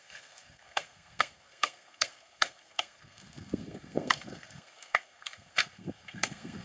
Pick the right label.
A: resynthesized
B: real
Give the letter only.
A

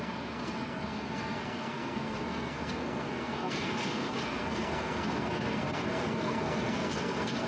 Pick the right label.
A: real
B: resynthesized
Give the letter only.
B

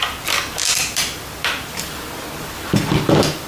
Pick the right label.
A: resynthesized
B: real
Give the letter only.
B